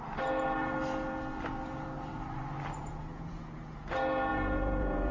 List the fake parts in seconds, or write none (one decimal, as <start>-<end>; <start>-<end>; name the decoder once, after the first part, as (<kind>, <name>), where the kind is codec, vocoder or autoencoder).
2.8-3.9 (vocoder, Vocos); 4.3-5.1